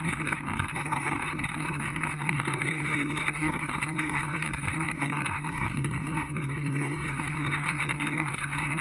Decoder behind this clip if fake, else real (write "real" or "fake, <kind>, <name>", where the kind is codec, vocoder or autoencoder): fake, codec, SNAC